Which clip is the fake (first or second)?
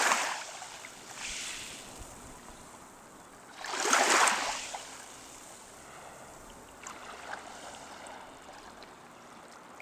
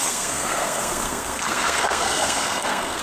second